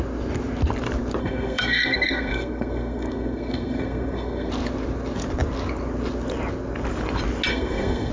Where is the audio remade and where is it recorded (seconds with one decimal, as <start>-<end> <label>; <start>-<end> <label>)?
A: 0.0-1.2 recorded; 1.2-4.5 remade; 4.5-7.5 recorded; 7.5-8.1 remade